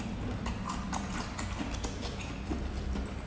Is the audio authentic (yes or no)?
yes